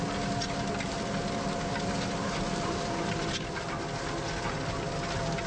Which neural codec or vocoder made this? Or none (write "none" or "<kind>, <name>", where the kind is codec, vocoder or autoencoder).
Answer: none